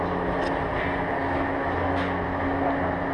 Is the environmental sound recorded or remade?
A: recorded